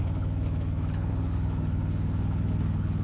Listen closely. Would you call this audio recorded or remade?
remade